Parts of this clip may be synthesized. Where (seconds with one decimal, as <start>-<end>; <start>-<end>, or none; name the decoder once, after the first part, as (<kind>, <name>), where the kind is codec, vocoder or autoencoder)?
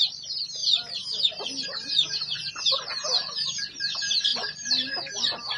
none